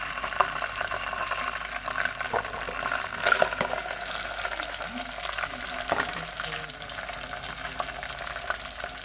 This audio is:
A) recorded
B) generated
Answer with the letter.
A